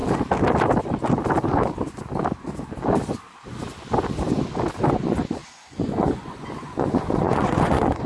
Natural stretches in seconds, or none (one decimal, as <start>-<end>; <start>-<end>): 0.0-4.9